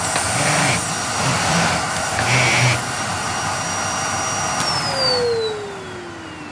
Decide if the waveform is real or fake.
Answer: real